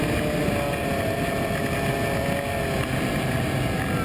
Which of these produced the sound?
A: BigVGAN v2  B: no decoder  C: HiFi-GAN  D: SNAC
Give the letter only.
B